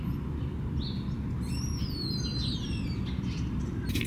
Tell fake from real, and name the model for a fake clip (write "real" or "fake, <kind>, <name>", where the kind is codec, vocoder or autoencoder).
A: real